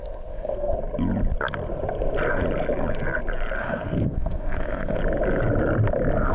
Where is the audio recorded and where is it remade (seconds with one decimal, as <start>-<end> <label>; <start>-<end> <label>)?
0.0-0.8 remade; 0.8-3.6 recorded; 3.6-5.0 remade; 5.0-6.3 recorded